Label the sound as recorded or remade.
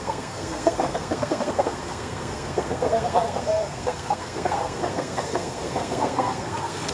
remade